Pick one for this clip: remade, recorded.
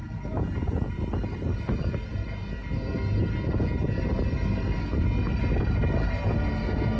recorded